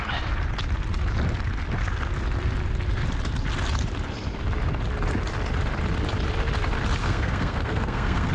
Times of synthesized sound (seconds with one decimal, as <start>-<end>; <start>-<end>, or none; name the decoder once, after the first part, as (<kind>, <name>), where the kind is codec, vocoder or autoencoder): 7.0-8.3 (codec, SNAC)